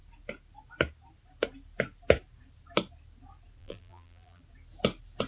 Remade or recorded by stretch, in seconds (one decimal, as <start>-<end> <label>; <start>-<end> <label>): 0.0-3.6 recorded; 3.6-4.4 remade; 4.4-5.3 recorded